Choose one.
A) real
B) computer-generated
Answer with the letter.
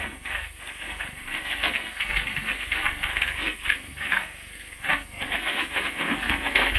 B